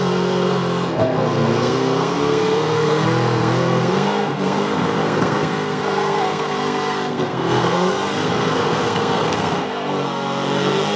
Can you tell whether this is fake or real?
fake